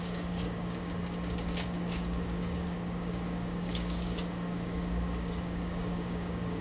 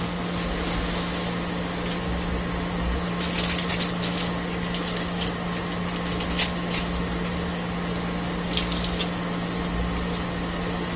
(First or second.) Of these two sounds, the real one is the second